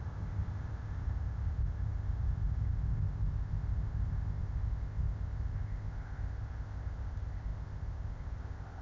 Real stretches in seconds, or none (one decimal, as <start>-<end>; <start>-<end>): none